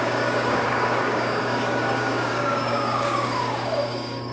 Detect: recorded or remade remade